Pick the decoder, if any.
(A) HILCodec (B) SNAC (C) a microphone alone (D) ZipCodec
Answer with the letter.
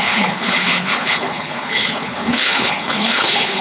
A